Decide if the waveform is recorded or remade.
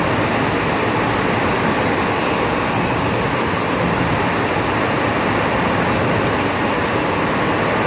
recorded